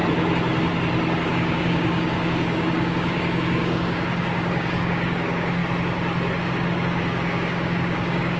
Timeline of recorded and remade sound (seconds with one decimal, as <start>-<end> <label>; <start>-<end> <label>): 0.0-1.3 recorded; 1.3-5.6 remade; 5.6-6.4 recorded; 6.4-8.4 remade